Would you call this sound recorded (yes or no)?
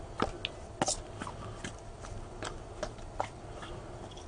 yes